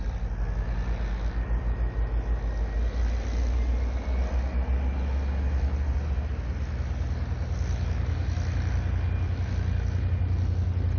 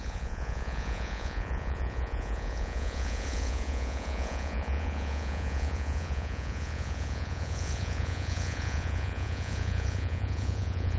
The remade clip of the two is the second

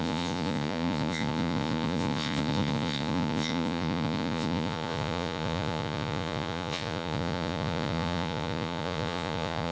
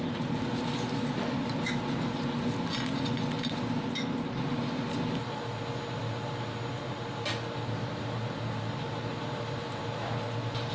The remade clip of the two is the first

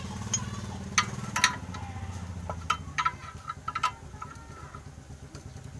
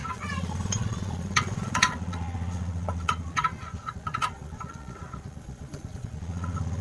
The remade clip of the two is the second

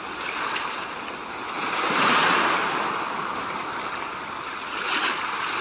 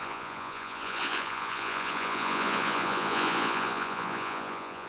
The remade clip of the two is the second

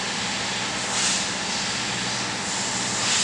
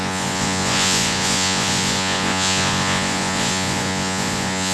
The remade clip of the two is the second